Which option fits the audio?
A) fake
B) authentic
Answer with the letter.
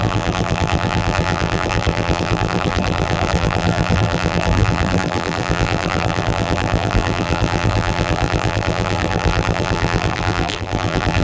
A